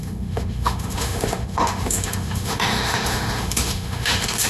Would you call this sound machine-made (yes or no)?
yes